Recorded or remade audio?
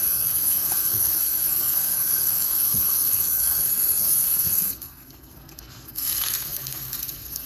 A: remade